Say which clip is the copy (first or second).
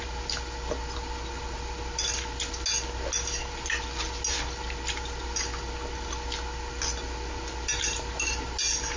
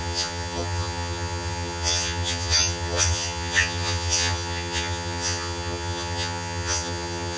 second